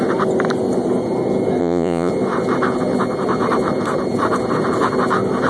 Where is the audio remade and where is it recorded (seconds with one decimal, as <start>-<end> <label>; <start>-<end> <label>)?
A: 0.0-1.6 recorded; 1.6-2.1 remade; 2.1-5.5 recorded